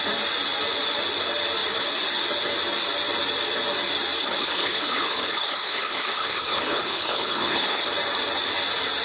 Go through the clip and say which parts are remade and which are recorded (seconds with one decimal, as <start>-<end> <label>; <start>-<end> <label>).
0.0-4.2 recorded; 4.2-7.9 remade; 7.9-9.0 recorded

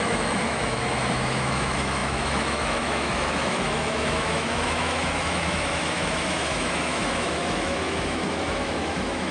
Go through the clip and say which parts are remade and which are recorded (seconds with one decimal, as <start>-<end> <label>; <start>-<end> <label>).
0.0-9.3 remade